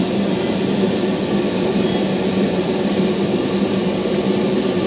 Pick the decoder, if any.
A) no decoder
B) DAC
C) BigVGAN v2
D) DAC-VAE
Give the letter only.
A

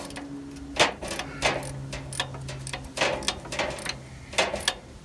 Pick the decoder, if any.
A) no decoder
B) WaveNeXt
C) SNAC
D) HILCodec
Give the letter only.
A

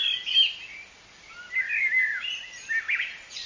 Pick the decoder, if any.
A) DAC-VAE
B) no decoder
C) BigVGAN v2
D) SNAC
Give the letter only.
B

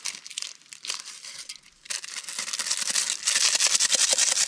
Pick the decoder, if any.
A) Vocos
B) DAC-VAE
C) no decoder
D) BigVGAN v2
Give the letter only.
D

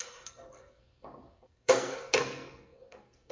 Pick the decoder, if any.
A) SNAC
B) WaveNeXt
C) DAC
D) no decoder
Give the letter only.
A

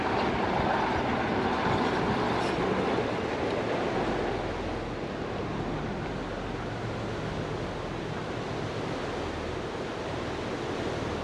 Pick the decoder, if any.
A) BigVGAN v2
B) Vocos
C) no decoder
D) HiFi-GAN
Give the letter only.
C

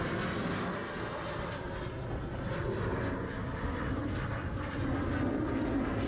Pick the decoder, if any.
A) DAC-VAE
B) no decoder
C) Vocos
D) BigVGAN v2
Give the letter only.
B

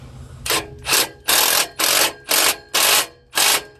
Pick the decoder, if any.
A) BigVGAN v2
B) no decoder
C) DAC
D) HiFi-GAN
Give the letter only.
B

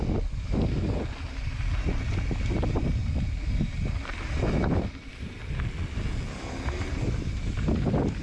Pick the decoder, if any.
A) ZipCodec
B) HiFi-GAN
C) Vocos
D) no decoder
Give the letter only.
D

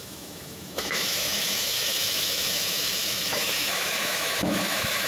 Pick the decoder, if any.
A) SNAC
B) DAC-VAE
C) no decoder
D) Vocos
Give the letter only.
B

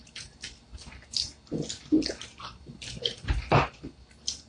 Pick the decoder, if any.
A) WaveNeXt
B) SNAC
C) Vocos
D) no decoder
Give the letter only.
D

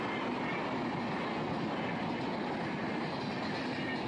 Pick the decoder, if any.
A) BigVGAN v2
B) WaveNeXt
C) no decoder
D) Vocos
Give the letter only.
C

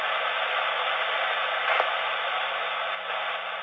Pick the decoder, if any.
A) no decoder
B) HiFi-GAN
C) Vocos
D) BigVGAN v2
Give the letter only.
A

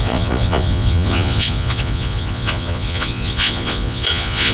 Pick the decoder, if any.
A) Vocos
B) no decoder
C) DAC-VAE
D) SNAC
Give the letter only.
A